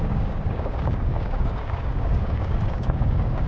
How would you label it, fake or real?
fake